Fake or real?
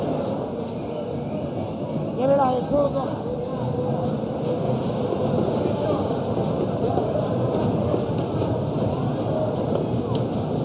real